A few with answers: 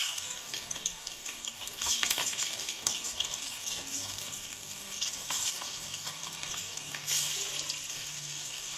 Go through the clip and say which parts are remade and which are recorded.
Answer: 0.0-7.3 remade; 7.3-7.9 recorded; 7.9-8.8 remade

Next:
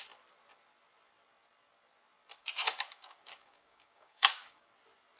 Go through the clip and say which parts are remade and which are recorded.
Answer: 0.0-2.4 recorded; 2.4-4.7 remade; 4.7-5.2 recorded

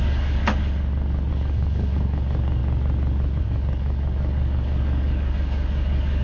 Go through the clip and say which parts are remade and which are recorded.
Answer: 0.0-0.4 remade; 0.4-1.3 recorded; 1.3-2.6 remade; 2.6-3.4 recorded; 3.4-6.2 remade

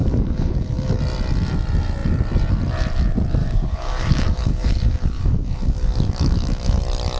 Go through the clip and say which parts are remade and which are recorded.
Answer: 0.0-1.0 remade; 1.0-3.4 recorded; 3.4-6.8 remade; 6.8-7.2 recorded

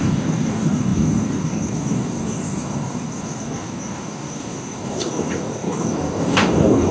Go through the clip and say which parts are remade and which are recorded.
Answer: 0.0-6.9 remade